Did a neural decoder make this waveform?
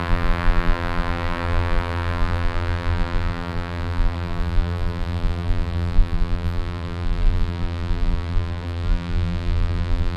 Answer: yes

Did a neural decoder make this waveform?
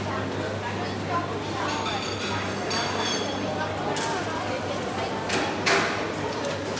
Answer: no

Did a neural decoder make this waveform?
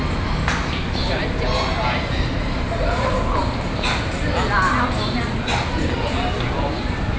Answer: no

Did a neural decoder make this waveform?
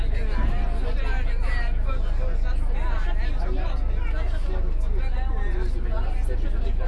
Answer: no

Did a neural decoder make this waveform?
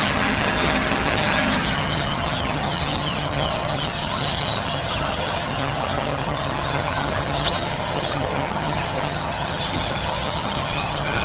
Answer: yes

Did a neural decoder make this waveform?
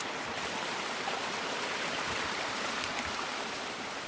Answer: no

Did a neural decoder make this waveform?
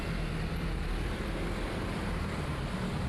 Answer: no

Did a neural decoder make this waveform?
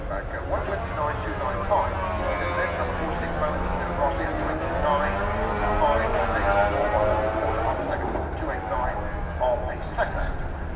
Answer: no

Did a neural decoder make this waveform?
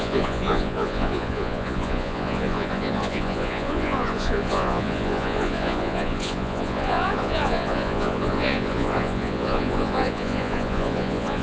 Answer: yes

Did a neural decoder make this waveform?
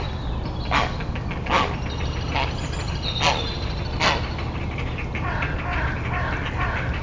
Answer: no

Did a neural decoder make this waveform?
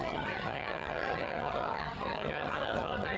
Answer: yes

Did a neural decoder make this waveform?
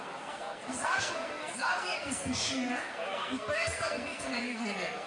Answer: yes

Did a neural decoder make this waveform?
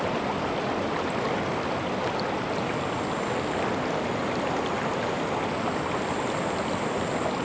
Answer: no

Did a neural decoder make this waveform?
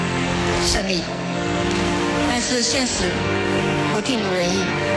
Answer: yes